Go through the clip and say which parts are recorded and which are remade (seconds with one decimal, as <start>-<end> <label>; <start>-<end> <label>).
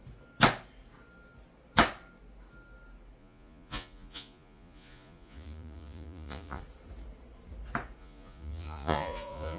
0.0-3.2 recorded; 3.2-6.6 remade; 6.6-8.0 recorded; 8.0-9.6 remade